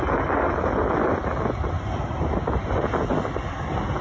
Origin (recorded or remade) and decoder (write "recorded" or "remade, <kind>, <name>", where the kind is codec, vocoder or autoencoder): recorded